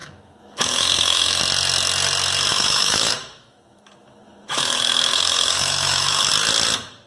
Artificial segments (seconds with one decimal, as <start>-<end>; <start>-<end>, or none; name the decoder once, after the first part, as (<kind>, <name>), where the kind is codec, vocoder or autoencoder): 0.0-1.4 (autoencoder, DAC-VAE); 2.5-6.3